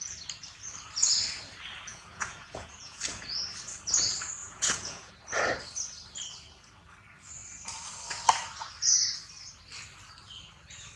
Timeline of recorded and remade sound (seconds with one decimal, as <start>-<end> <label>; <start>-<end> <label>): 0.0-1.9 recorded; 1.9-3.0 remade; 3.0-4.4 recorded; 4.4-5.1 remade; 5.1-11.0 recorded